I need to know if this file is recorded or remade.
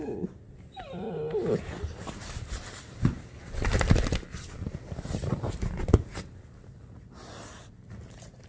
recorded